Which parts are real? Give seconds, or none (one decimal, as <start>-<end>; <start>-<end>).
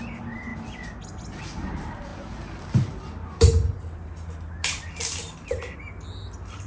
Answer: 0.0-6.7